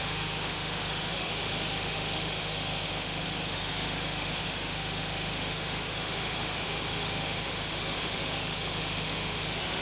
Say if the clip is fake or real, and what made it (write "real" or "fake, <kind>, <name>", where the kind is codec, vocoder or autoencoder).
fake, autoencoder, DAC-VAE